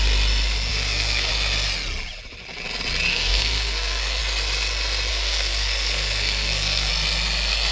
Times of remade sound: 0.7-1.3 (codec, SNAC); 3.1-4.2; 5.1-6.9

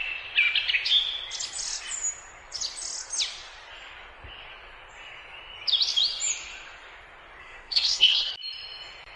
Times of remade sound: 7.4-8.3 (codec, SNAC)

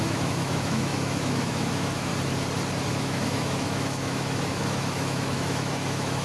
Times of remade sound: 0.0-2.1 (autoencoder, DAC-VAE); 2.9-6.2

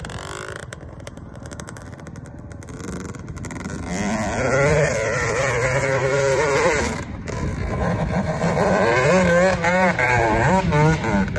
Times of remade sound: 0.6-2.3 (vocoder, BigVGAN v2); 4.7-9.1; 9.7-10.5

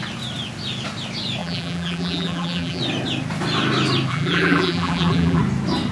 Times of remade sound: 1.4-2.8 (vocoder, BigVGAN v2); 4.1-5.4

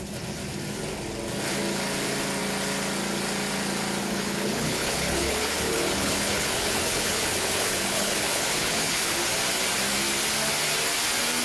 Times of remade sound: 4.0-9.2 (codec, HILCodec)